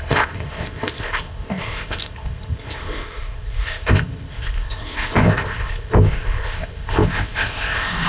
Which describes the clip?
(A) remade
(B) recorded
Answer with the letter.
A